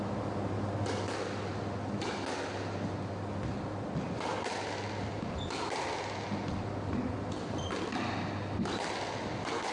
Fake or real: real